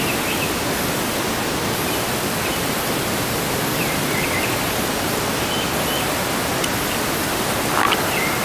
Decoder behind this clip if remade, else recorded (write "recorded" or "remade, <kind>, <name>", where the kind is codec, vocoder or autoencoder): recorded